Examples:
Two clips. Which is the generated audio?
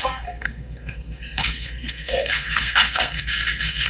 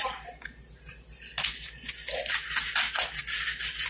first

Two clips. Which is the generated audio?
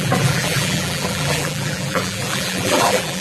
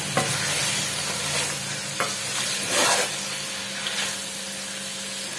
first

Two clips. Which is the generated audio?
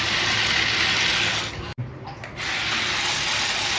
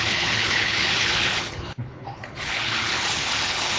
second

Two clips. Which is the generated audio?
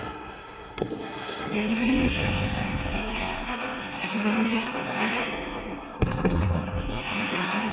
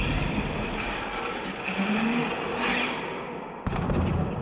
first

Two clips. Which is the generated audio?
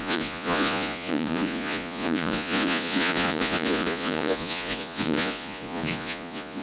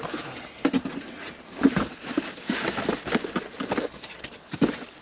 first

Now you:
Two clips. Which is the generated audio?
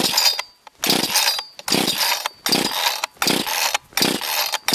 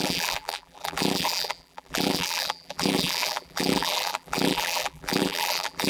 second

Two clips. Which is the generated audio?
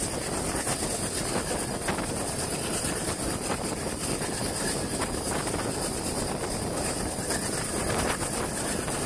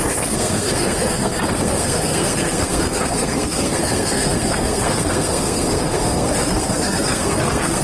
second